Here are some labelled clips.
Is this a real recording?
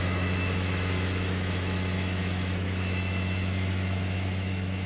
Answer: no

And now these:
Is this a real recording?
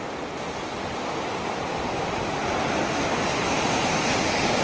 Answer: yes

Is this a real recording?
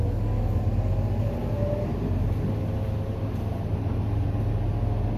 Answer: yes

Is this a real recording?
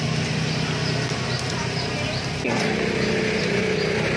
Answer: yes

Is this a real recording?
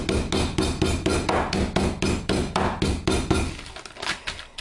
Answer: yes